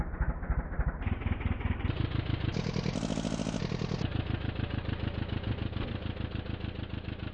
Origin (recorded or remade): recorded